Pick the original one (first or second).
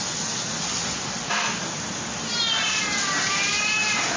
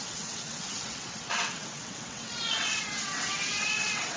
first